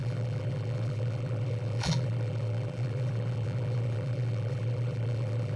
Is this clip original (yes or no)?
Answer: no